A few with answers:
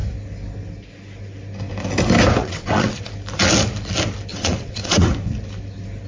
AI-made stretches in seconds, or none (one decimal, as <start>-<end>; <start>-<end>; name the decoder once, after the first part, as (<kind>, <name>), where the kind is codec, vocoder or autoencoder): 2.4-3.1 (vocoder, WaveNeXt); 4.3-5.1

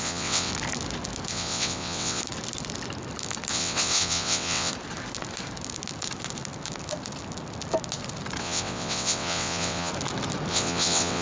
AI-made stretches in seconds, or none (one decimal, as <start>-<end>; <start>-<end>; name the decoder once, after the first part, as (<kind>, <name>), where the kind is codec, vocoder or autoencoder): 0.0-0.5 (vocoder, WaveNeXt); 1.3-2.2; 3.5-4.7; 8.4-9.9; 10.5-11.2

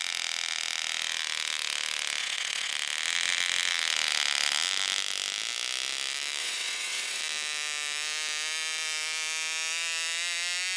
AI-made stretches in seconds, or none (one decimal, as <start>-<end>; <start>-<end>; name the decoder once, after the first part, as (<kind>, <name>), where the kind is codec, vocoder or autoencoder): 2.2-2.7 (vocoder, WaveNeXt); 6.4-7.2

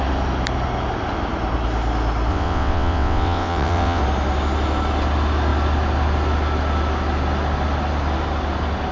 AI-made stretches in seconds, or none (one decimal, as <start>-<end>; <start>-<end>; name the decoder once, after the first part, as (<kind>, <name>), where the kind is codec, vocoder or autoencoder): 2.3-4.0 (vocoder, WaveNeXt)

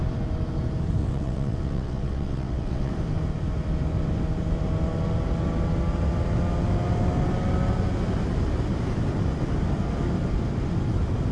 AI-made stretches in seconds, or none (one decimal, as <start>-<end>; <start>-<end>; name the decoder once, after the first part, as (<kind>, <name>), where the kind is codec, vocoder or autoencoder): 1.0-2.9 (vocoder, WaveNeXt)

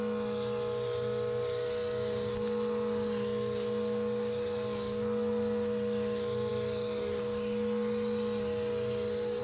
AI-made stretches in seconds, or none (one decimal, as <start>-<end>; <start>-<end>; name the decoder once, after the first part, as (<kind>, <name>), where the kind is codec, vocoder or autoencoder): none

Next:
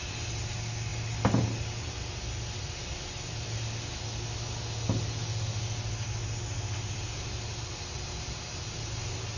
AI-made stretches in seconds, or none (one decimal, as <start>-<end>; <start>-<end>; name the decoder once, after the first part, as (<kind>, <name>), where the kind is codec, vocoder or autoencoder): none

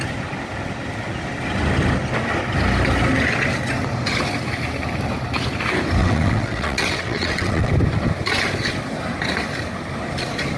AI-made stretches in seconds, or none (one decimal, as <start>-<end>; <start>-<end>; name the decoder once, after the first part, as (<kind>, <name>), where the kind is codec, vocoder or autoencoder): 6.0-7.7 (vocoder, WaveNeXt)